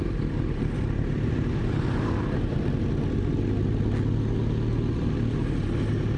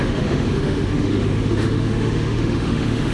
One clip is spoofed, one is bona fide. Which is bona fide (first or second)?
first